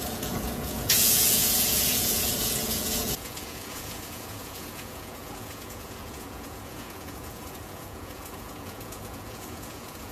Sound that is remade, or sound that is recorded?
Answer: remade